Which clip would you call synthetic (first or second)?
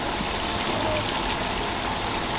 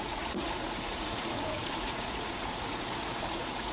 second